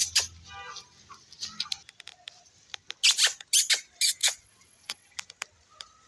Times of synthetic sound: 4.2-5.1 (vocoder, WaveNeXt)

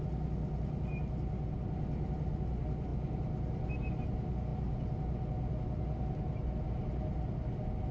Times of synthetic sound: none